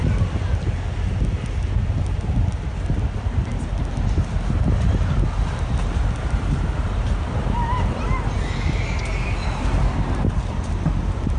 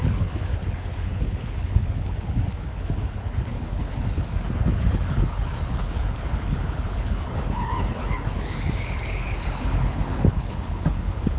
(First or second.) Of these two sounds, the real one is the first